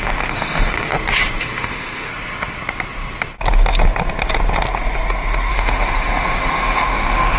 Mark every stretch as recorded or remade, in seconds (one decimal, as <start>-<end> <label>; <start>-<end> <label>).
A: 0.0-0.9 remade; 0.9-1.4 recorded; 1.4-2.1 remade; 2.1-5.5 recorded; 5.5-7.4 remade